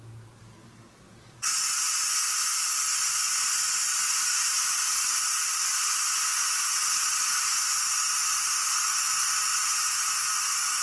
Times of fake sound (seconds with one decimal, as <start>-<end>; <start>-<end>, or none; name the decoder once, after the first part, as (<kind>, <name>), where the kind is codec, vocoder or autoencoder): none